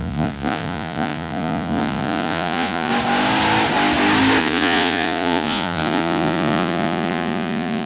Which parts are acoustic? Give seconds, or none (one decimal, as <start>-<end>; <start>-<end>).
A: 2.9-4.4